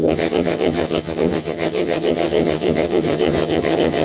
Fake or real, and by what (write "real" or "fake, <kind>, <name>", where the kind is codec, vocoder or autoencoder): fake, vocoder, HiFi-GAN